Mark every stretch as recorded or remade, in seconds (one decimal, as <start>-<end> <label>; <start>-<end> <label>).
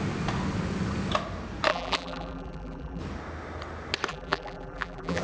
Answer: 0.0-1.7 recorded; 1.7-3.0 remade; 3.0-4.1 recorded; 4.1-5.2 remade